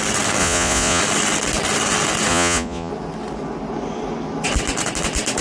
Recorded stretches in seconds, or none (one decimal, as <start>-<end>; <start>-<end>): 0.0-0.4; 1.0-2.3; 2.9-5.4